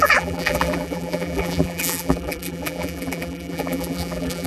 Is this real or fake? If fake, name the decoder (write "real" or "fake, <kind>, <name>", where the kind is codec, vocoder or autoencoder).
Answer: fake, vocoder, BigVGAN v2